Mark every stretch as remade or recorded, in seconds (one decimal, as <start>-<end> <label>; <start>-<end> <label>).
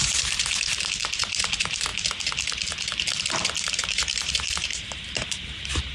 0.0-0.4 remade; 0.4-1.2 recorded; 1.2-1.9 remade; 1.9-3.7 recorded; 3.7-5.9 remade